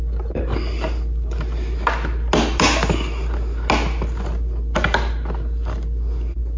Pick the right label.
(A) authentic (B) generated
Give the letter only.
A